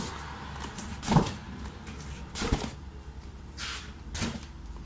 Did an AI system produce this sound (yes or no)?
no